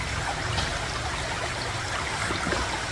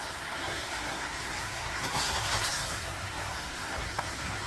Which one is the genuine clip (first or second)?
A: first